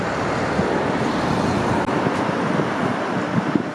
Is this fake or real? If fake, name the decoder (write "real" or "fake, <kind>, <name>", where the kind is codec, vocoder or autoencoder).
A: real